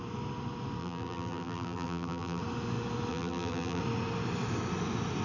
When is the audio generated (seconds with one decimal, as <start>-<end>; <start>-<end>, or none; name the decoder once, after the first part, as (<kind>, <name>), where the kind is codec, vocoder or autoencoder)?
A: 0.8-2.4 (vocoder, BigVGAN v2); 3.1-3.8